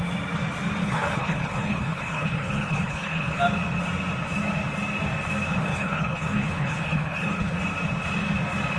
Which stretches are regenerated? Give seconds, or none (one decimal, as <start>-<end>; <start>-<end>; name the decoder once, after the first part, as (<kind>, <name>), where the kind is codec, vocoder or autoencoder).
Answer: 0.8-3.4 (codec, HILCodec); 5.7-7.6